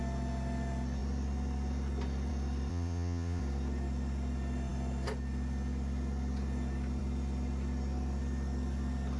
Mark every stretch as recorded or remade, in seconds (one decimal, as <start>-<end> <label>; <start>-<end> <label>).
0.0-2.7 recorded; 2.7-3.4 remade; 3.4-9.2 recorded